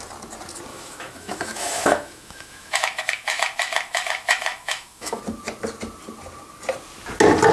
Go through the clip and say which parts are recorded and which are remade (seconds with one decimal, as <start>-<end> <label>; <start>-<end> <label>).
0.0-0.7 recorded; 0.7-5.2 remade; 5.2-7.5 recorded